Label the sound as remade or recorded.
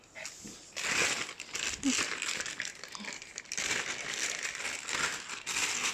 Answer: recorded